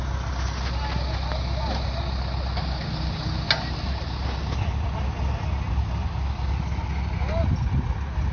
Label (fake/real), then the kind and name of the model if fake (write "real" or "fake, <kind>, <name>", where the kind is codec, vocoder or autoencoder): real